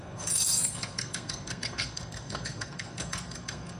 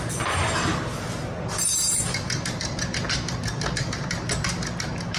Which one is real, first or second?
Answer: second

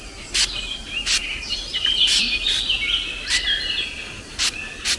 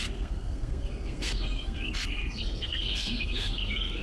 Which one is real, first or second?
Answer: first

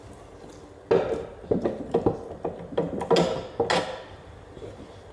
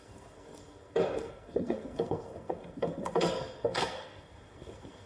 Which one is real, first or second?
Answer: first